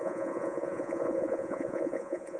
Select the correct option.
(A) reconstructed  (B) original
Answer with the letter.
A